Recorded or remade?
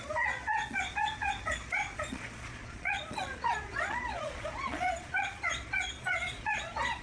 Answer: remade